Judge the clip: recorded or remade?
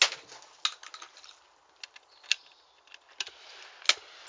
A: recorded